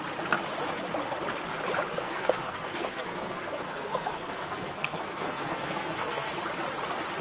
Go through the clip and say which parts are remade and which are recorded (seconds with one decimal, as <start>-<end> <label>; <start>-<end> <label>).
0.0-2.0 recorded; 2.0-6.3 remade; 6.3-7.2 recorded